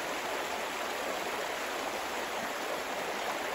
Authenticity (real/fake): real